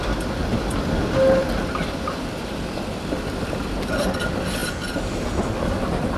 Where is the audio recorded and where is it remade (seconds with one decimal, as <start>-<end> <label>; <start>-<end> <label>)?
0.0-6.2 recorded

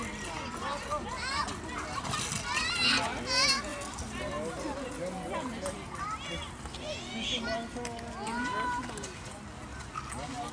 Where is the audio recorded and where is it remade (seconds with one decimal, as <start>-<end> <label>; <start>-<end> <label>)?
0.0-10.5 recorded

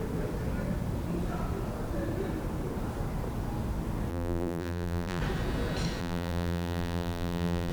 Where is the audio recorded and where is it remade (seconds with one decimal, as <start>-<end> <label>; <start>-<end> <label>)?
0.0-4.1 recorded; 4.1-5.2 remade; 5.2-6.0 recorded; 6.0-7.7 remade

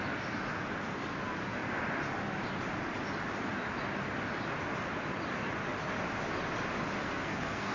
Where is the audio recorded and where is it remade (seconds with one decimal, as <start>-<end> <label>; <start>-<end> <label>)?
0.0-7.0 recorded; 7.0-7.7 remade

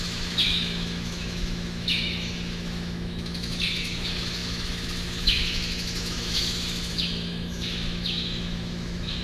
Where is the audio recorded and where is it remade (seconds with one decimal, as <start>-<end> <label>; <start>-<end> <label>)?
0.0-9.2 remade

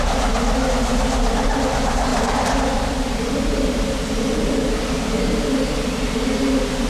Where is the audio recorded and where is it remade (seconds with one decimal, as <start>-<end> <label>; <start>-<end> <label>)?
0.0-2.1 recorded; 2.1-4.2 remade; 4.2-6.9 recorded